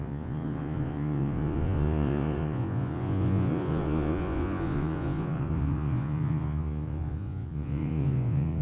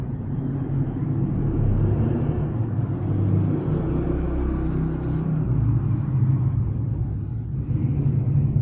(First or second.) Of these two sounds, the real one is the second